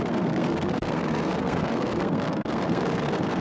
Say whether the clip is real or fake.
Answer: fake